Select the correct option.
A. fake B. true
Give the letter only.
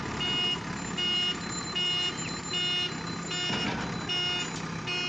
B